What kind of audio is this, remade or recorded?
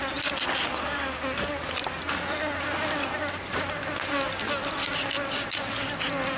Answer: recorded